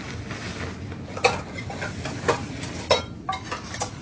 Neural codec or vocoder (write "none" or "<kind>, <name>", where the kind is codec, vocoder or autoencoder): none